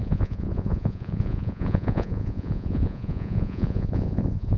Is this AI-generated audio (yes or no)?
yes